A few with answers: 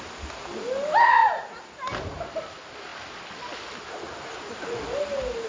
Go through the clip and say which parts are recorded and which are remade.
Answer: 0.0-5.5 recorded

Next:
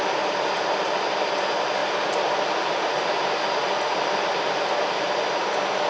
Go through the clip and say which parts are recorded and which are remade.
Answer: 0.0-5.9 recorded

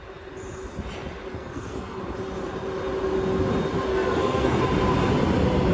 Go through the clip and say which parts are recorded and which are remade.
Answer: 0.0-1.3 recorded; 1.3-2.0 remade; 2.0-3.9 recorded; 3.9-4.6 remade; 4.6-5.7 recorded

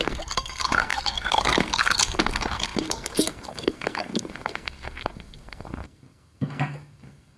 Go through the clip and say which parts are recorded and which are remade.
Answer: 0.0-7.4 remade

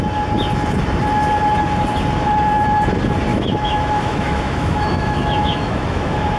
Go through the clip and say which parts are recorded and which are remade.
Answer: 0.0-3.3 recorded; 3.3-6.4 remade

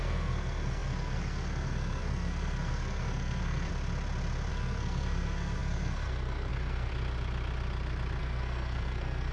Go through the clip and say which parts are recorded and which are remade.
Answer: 0.0-3.7 remade; 3.7-4.5 recorded; 4.5-6.9 remade; 6.9-8.2 recorded; 8.2-9.3 remade